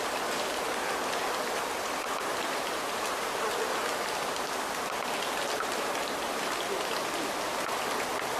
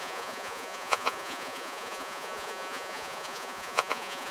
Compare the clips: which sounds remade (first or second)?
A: second